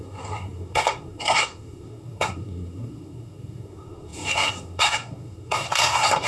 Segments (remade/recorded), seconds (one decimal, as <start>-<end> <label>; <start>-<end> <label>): 0.0-6.3 remade